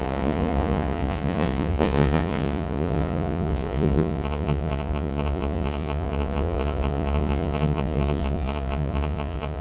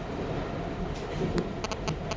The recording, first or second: second